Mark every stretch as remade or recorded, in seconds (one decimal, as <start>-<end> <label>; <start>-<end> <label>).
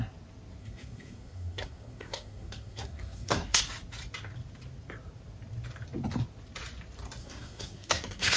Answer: 0.0-0.6 recorded; 0.6-3.6 remade; 3.6-7.2 recorded; 7.2-8.4 remade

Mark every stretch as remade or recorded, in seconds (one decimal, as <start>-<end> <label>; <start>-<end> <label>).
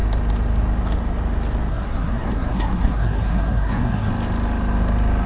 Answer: 0.0-1.7 recorded; 1.7-4.1 remade; 4.1-5.3 recorded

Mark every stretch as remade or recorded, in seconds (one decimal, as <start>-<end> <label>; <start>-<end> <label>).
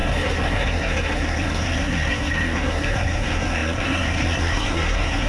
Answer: 0.0-5.3 remade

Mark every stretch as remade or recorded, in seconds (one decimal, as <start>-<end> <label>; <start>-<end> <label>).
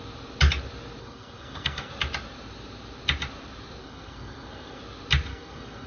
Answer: 0.0-1.0 recorded; 1.0-1.9 remade; 1.9-3.8 recorded; 3.8-4.8 remade; 4.8-5.3 recorded; 5.3-5.9 remade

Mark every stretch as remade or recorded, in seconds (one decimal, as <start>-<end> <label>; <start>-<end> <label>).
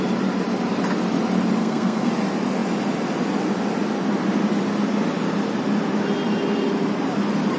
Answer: 0.0-1.6 recorded; 1.6-2.1 remade; 2.1-7.6 recorded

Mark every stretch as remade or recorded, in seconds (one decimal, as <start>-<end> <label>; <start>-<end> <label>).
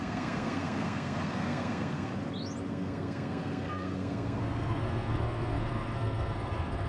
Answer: 0.0-2.1 remade; 2.1-2.7 recorded; 2.7-6.9 remade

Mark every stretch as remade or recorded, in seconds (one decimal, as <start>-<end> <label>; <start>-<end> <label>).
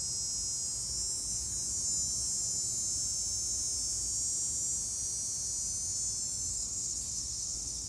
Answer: 0.0-6.5 recorded; 6.5-7.9 remade